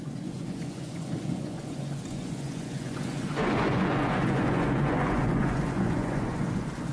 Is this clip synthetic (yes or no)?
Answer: yes